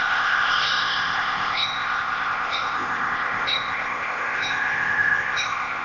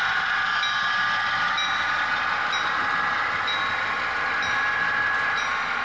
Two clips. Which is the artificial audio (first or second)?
first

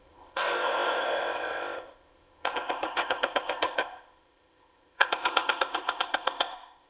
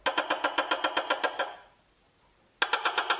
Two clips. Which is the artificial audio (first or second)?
first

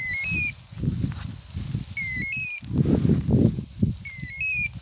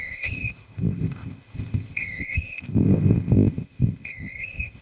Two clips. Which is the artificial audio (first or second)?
second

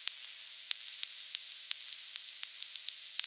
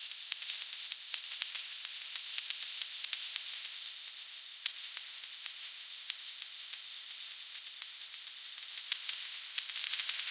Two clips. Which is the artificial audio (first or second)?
second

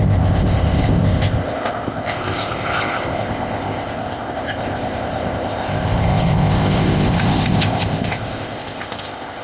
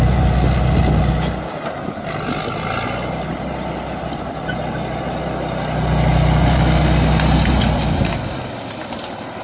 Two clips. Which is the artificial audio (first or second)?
first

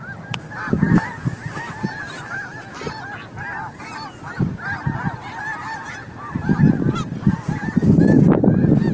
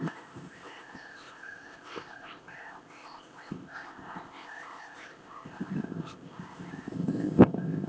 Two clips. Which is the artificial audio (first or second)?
second